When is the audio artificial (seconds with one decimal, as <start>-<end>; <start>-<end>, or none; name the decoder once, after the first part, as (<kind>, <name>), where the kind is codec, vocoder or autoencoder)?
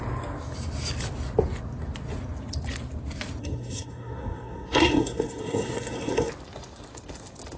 3.4-6.3 (codec, SNAC)